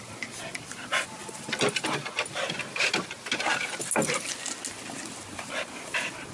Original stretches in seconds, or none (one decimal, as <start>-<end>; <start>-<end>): 0.0-6.3